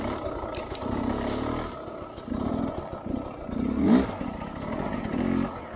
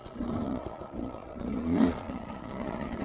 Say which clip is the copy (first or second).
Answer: second